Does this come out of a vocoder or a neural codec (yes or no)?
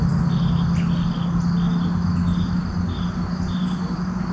no